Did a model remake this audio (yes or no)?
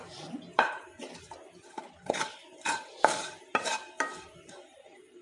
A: yes